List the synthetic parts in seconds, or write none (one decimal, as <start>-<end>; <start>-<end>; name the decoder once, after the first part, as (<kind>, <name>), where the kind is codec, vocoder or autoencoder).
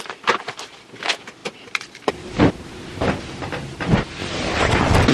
none